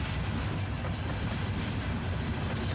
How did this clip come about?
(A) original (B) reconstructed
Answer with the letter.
A